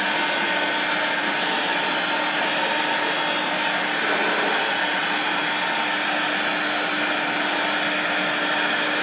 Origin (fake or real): real